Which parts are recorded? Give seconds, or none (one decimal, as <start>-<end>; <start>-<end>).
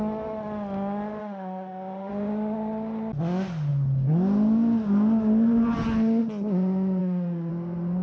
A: 0.0-1.2; 2.1-7.0; 7.5-8.0